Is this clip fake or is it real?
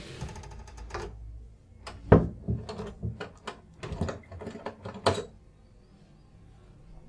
real